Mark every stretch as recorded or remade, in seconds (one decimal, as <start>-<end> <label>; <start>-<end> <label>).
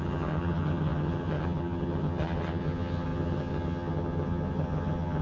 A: 0.0-5.2 remade